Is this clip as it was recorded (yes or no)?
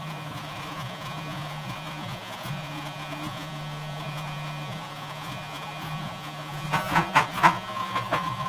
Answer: no